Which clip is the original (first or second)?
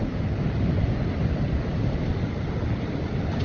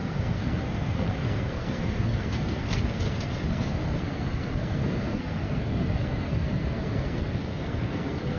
first